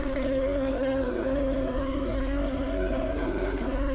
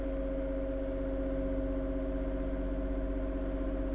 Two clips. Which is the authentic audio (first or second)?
second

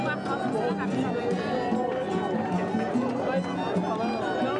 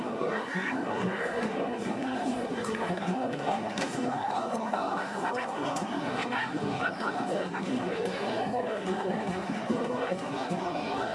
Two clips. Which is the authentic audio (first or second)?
first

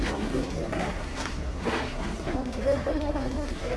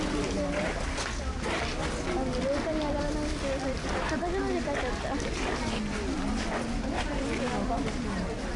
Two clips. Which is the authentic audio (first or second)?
second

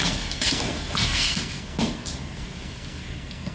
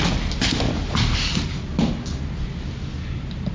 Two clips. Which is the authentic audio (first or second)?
second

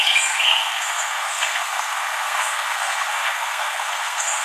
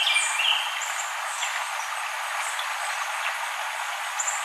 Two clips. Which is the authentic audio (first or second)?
second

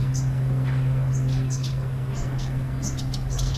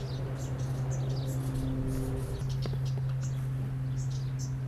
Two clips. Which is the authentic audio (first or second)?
second